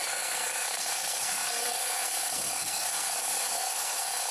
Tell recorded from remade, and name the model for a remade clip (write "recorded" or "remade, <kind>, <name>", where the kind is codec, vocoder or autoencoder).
remade, codec, SNAC